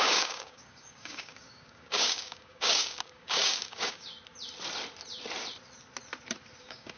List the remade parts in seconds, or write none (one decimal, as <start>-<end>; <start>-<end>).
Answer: 0.0-4.1; 6.6-7.0